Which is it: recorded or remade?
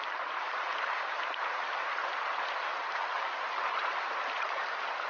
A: recorded